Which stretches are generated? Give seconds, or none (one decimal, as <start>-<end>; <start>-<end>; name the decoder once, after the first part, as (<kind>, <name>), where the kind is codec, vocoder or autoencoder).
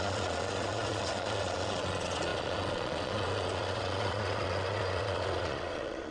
0.0-6.1 (vocoder, Vocos)